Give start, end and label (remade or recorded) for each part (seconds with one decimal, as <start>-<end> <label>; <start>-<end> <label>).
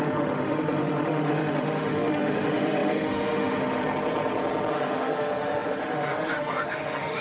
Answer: 0.0-3.8 remade; 3.8-4.7 recorded; 4.7-7.2 remade